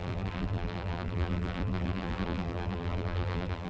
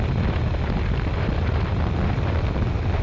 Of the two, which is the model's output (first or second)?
first